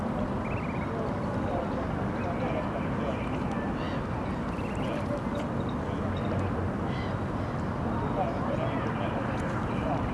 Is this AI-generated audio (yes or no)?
no